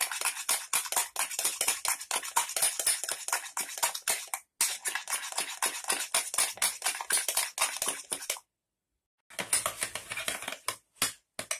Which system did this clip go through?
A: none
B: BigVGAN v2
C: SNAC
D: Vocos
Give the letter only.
A